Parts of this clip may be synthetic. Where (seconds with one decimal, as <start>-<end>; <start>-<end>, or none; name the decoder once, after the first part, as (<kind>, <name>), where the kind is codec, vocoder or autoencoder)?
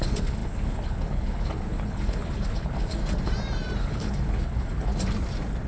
0.0-3.0 (codec, HILCodec); 3.8-4.9